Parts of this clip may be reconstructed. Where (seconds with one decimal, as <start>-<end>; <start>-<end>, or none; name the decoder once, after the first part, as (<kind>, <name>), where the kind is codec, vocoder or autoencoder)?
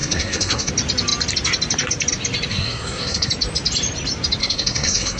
0.0-0.7 (codec, SNAC); 2.5-3.3; 4.4-5.2